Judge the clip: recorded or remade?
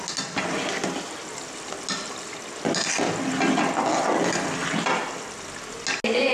recorded